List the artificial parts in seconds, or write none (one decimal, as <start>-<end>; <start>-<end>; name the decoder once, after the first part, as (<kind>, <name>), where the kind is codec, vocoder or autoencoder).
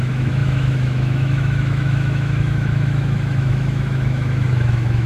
0.0-5.1 (autoencoder, DAC-VAE)